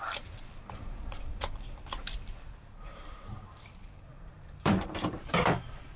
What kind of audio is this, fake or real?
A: fake